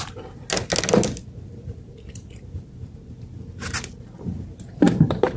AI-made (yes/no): no